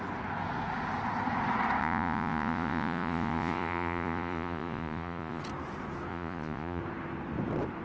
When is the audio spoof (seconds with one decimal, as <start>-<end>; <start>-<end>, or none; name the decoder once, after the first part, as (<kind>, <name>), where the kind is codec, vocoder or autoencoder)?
1.8-5.4 (vocoder, Vocos); 6.1-6.8